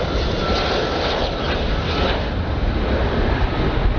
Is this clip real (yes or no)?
yes